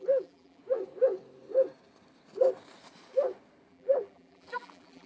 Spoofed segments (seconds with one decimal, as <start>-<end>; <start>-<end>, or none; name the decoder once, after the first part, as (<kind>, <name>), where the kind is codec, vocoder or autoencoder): 0.0-0.6 (vocoder, BigVGAN v2); 3.7-5.1